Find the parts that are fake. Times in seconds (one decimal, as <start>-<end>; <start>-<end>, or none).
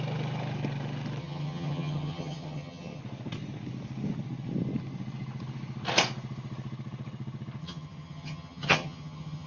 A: 1.2-3.0; 7.6-9.5